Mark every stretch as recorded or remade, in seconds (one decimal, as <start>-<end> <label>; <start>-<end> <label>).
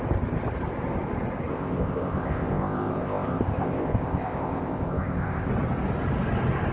0.0-1.5 recorded; 1.5-5.5 remade; 5.5-6.7 recorded